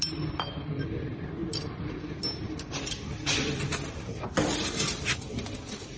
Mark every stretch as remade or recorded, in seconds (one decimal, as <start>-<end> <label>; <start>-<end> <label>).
0.0-6.0 recorded